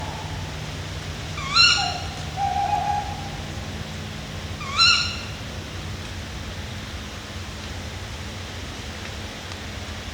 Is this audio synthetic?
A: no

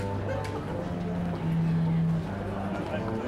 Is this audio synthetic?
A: no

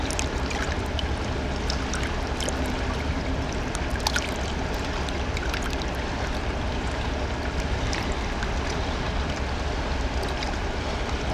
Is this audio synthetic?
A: yes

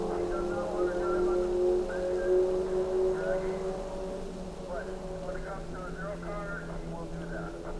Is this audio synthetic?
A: no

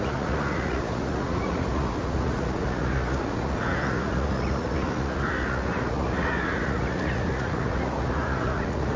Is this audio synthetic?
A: yes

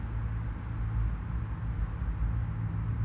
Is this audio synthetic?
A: no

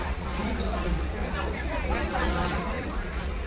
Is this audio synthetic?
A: yes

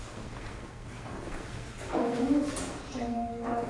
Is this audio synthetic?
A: yes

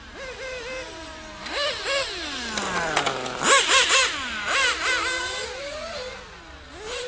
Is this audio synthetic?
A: no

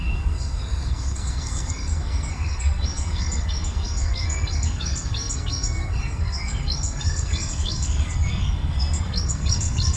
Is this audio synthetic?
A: yes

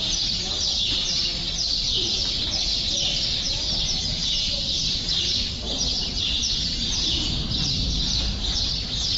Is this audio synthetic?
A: yes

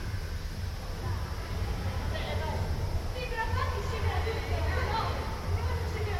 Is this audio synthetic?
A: no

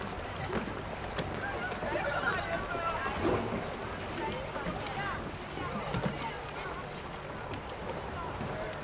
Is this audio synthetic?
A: no